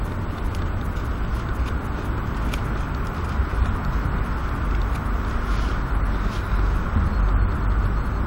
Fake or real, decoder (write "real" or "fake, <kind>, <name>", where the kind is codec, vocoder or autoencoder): real